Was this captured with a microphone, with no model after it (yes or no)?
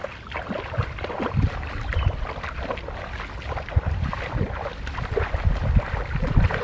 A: yes